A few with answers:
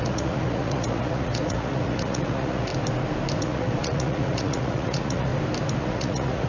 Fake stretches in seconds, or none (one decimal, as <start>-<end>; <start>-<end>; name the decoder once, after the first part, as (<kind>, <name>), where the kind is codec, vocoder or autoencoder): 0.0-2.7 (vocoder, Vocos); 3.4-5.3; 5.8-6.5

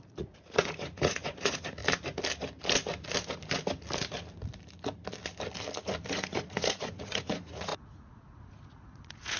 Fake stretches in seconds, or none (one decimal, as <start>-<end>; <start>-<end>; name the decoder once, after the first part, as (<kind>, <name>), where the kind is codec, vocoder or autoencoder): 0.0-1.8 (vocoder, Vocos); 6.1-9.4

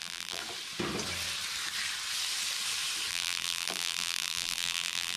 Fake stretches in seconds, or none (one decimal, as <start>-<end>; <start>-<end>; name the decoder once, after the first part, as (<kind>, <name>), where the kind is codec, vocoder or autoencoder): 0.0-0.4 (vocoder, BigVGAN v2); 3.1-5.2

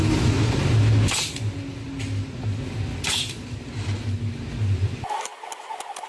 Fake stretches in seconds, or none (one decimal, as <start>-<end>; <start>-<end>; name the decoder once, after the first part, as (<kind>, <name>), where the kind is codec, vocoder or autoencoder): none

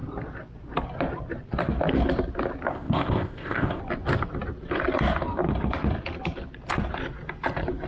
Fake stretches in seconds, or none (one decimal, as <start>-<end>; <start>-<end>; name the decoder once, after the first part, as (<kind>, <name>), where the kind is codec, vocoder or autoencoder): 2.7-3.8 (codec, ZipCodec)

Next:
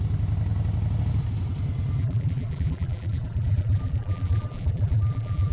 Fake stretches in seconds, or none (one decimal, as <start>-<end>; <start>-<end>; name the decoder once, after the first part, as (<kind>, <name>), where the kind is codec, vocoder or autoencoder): 2.0-5.5 (vocoder, BigVGAN v2)

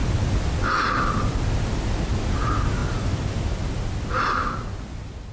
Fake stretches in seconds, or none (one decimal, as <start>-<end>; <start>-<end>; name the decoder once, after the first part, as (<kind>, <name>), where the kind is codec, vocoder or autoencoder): none

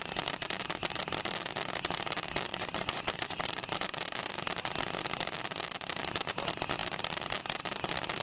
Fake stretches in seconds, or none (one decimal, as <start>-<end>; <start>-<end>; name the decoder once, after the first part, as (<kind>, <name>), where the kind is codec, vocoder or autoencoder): 2.5-3.4 (vocoder, WaveNeXt)